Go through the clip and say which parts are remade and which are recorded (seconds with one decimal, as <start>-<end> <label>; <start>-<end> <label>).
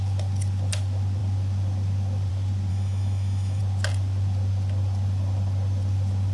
0.0-2.7 recorded; 2.7-3.6 remade; 3.6-6.3 recorded